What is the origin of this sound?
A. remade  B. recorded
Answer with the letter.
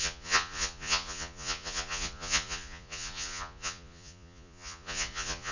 A